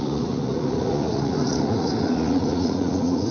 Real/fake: fake